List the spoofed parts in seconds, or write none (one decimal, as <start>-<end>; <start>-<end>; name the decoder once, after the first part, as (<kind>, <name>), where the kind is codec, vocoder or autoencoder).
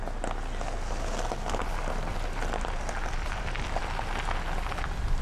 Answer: 2.1-3.8 (vocoder, BigVGAN v2)